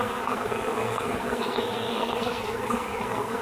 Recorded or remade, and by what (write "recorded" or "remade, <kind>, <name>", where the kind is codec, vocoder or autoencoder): remade, codec, SNAC